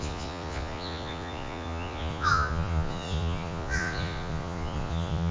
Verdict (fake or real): fake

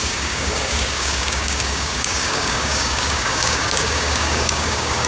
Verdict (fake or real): fake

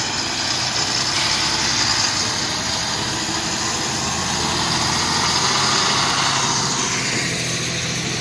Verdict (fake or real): real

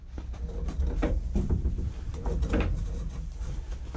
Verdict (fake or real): real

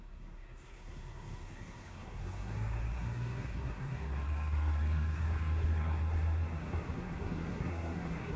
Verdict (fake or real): fake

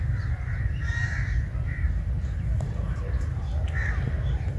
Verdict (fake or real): real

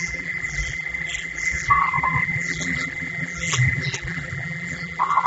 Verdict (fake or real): fake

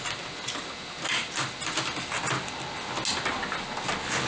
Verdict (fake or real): real